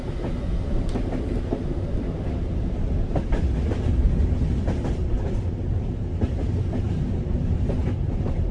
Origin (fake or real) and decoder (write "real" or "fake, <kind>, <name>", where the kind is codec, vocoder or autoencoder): real